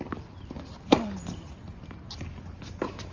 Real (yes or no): yes